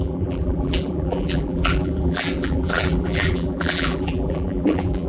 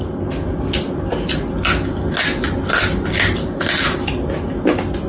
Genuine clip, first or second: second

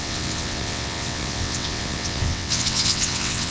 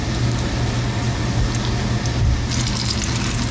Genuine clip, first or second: second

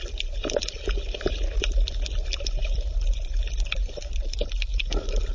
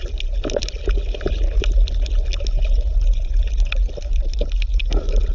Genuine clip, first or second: second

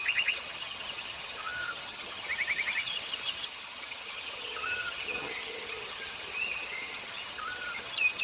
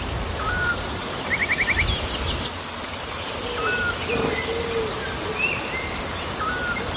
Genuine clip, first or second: second